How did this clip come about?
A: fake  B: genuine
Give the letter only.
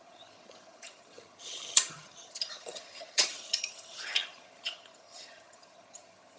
A